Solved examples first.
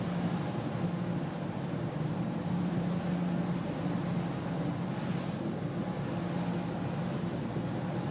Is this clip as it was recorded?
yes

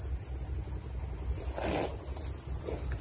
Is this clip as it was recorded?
yes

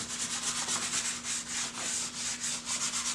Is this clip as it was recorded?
yes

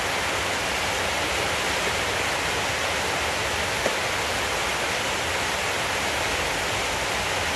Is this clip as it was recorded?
yes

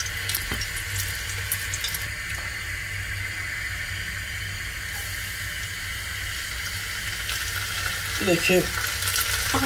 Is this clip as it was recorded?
yes